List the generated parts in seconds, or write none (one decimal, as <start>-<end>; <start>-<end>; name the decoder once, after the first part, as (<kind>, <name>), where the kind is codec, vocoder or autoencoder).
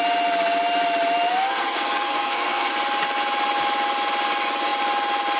1.3-2.7 (codec, SNAC)